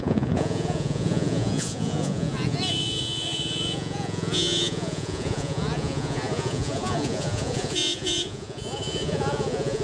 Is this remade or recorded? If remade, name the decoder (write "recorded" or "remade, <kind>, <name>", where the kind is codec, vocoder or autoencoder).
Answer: remade, vocoder, Vocos